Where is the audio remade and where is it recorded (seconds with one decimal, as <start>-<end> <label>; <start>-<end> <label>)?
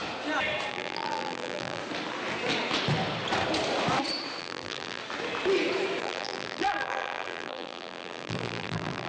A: 0.0-0.7 recorded; 0.7-1.8 remade; 1.8-4.4 recorded; 4.4-5.0 remade; 5.0-6.0 recorded; 6.0-9.1 remade